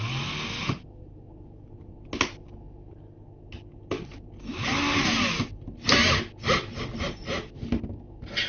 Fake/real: real